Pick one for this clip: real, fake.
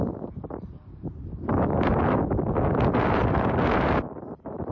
real